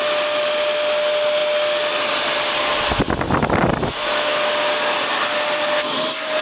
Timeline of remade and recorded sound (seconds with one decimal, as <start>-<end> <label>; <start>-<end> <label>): 0.0-6.4 recorded